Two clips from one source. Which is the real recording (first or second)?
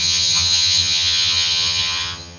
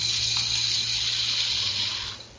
second